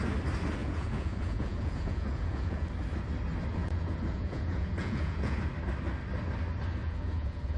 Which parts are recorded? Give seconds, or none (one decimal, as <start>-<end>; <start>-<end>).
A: 0.0-0.6; 2.7-3.6; 5.4-6.8